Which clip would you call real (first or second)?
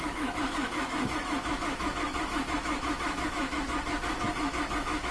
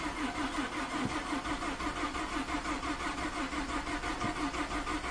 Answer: second